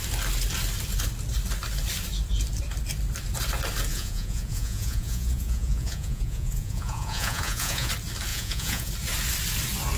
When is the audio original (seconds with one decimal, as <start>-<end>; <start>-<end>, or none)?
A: 0.0-3.9; 7.9-8.3; 8.9-10.0

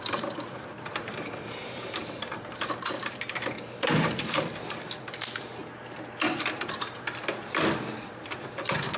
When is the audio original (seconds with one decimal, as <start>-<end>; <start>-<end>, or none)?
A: 5.6-6.4